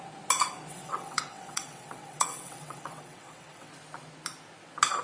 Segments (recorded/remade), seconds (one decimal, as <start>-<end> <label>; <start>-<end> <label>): 0.0-0.7 recorded; 0.7-3.7 remade; 3.7-5.0 recorded